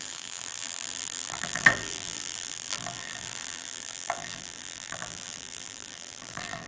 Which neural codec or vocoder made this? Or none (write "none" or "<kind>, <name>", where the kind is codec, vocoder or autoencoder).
vocoder, BigVGAN v2